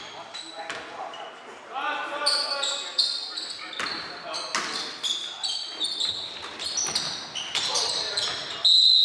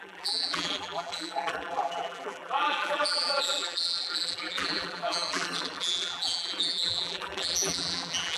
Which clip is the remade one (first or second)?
second